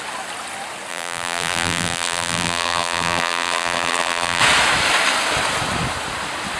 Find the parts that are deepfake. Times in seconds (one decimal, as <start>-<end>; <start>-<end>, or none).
0.9-4.4